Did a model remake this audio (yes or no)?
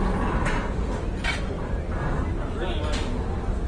no